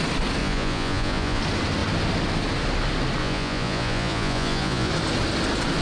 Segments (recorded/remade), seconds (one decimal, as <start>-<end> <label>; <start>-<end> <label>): 0.0-0.4 recorded; 0.4-1.4 remade; 1.4-3.2 recorded; 3.2-4.9 remade; 4.9-5.8 recorded